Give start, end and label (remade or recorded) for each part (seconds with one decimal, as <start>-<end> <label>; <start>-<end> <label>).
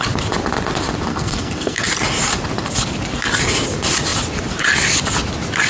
0.0-1.1 recorded; 1.1-1.9 remade; 1.9-5.7 recorded